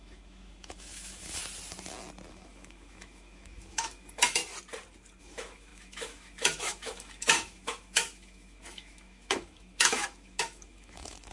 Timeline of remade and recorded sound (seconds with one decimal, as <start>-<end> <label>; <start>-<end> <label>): 0.0-1.4 remade; 1.4-2.3 recorded; 2.3-4.4 remade; 4.4-5.2 recorded; 5.2-11.3 remade